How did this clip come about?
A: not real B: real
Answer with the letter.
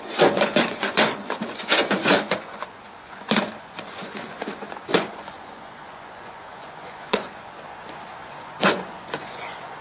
A